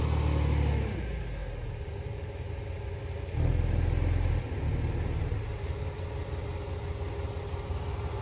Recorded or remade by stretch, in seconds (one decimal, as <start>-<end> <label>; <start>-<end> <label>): 0.0-8.2 recorded